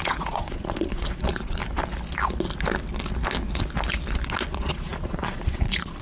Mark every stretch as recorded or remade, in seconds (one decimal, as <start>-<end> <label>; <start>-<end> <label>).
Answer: 0.0-1.6 remade; 1.6-4.4 recorded; 4.4-6.0 remade